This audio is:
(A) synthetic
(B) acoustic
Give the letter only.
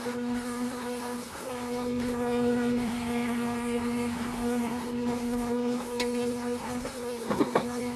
A